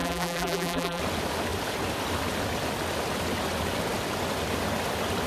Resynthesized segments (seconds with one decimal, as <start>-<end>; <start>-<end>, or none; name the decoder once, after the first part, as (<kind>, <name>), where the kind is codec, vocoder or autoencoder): 0.0-1.0 (vocoder, BigVGAN v2)